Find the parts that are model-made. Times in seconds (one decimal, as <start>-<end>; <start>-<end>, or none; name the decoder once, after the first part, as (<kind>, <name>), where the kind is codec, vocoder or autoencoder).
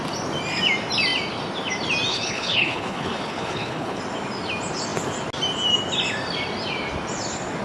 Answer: 2.1-4.0 (codec, HILCodec)